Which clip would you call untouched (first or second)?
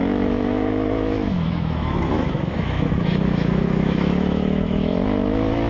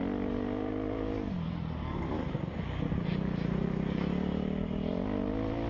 second